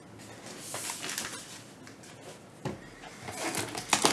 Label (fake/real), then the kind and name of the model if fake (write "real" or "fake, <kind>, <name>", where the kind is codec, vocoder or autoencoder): real